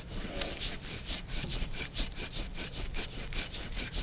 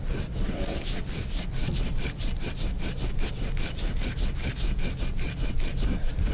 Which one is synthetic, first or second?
first